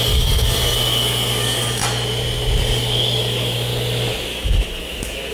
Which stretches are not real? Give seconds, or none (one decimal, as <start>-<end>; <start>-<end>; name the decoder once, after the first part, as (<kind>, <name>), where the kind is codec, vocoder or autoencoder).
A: 0.0-1.8 (codec, DAC); 2.6-3.7; 4.8-5.3